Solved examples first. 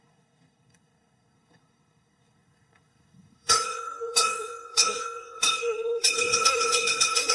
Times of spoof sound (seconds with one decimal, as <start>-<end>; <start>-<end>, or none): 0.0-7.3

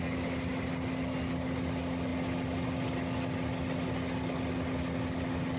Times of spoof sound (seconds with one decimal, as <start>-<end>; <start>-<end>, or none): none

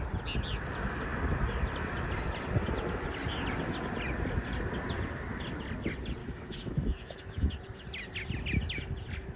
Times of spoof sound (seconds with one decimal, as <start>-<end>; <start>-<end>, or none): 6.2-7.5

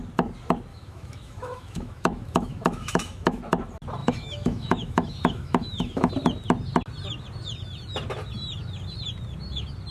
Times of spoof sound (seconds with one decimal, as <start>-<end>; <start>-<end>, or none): 0.7-3.4; 4.0-6.1

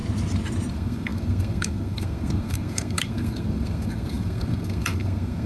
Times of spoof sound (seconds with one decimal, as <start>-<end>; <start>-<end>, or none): 0.7-5.5

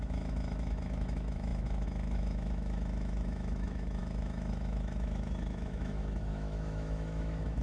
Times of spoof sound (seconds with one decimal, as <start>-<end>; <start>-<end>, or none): 0.0-7.6